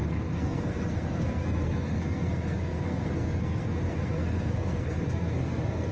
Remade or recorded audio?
remade